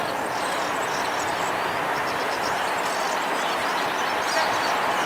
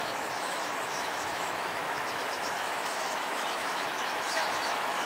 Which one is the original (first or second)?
first